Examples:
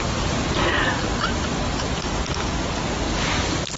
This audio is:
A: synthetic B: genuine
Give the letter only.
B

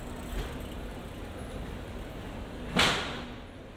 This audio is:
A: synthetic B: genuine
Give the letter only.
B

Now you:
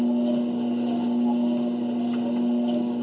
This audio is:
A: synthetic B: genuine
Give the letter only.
B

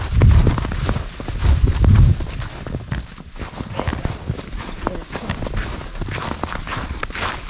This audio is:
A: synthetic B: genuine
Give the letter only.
B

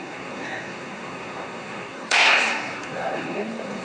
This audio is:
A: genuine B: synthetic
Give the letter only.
B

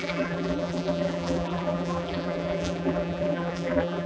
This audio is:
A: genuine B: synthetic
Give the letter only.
B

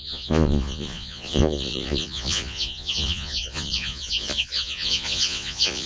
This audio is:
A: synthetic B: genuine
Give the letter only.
A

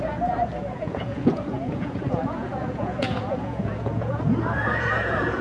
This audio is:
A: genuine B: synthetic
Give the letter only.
B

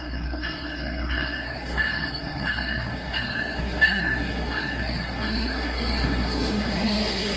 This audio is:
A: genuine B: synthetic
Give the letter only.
B